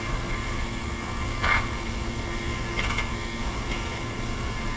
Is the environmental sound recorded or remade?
remade